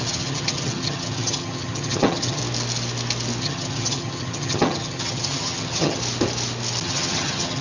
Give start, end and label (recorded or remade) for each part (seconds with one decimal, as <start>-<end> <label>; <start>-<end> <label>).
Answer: 0.0-2.4 remade; 2.4-3.4 recorded; 3.4-6.0 remade; 6.0-6.8 recorded; 6.8-7.6 remade